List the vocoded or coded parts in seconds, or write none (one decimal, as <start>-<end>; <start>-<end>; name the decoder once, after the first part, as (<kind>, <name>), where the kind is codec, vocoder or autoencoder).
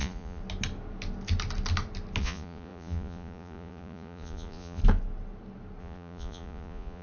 0.0-0.4 (vocoder, Vocos); 2.2-4.8; 5.8-7.0